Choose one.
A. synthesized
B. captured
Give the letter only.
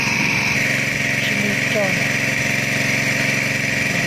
B